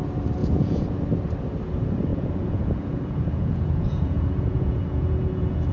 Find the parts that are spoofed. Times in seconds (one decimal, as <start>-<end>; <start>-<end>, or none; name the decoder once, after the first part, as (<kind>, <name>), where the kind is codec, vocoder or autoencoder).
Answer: 0.4-1.0 (vocoder, Vocos); 2.1-5.7